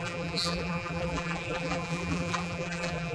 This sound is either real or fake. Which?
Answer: fake